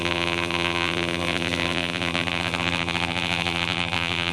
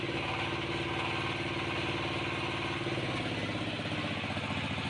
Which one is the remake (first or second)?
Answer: first